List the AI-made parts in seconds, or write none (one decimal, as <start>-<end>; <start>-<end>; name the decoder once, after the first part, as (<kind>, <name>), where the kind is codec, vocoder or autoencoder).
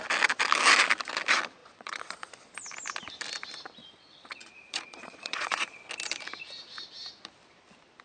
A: 1.6-2.3 (vocoder, Vocos); 3.8-5.9